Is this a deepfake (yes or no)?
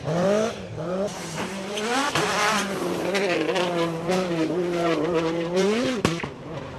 yes